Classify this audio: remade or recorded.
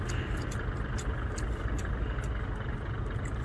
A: recorded